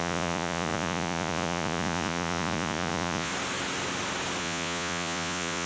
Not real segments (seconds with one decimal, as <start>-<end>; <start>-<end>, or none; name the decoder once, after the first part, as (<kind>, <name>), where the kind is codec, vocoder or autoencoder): 0.0-3.3 (vocoder, Vocos); 4.4-5.7